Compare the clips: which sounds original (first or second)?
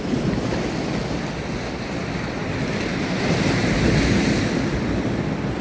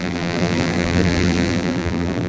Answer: first